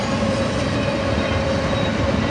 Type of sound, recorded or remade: recorded